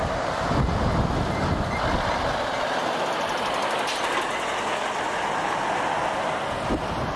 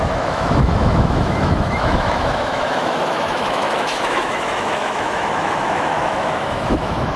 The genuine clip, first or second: first